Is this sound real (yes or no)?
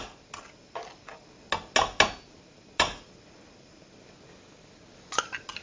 yes